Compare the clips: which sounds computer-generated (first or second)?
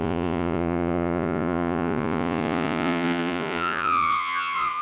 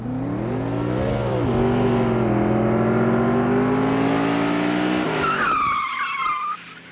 first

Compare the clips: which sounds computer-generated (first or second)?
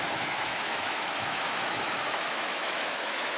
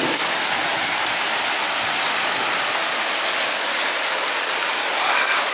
first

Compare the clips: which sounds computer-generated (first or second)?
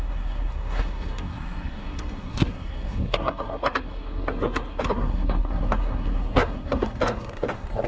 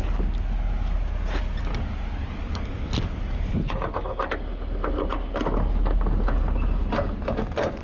first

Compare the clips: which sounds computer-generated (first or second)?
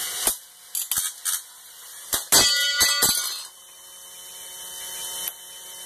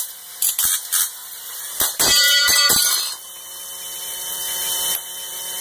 second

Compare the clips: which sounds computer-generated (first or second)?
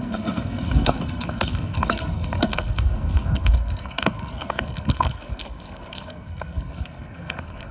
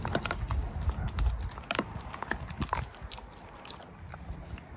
first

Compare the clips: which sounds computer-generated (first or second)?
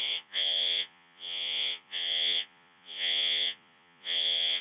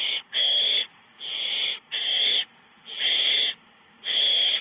first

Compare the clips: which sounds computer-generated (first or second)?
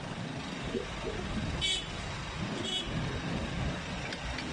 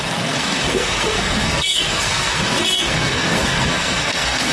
second